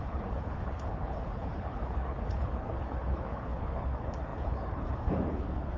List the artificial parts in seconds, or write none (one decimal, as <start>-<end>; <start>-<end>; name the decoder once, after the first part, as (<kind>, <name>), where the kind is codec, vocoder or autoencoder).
0.0-5.8 (codec, HILCodec)